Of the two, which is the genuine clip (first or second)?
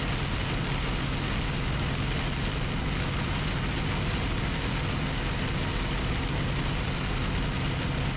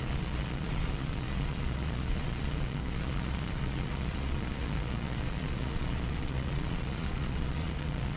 first